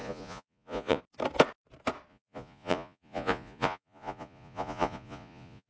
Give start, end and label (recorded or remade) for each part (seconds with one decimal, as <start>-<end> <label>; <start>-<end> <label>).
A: 0.0-1.0 remade; 1.0-2.1 recorded; 2.1-5.7 remade